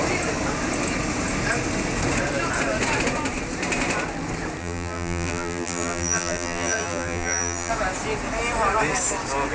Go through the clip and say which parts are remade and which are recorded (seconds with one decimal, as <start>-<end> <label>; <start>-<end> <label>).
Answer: 0.0-4.6 recorded; 4.6-7.7 remade; 7.7-9.5 recorded